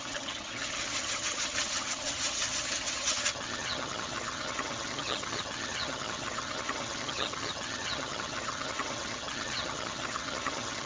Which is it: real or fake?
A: fake